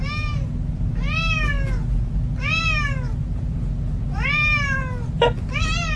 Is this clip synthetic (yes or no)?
no